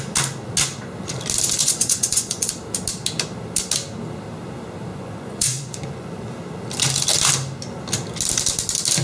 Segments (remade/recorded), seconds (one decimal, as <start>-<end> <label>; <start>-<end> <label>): 0.0-1.6 recorded; 1.6-2.5 remade; 2.5-4.9 recorded; 4.9-6.2 remade; 6.2-9.0 recorded

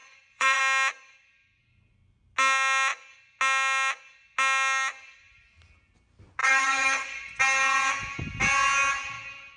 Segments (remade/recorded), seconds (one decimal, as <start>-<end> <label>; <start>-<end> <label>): 0.0-0.6 remade; 0.6-6.4 recorded; 6.4-7.4 remade; 7.4-9.6 recorded